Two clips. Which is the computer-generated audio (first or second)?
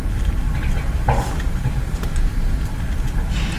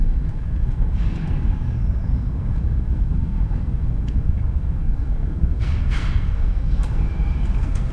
second